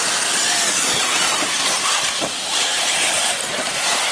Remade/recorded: recorded